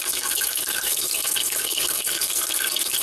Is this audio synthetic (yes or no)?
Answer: yes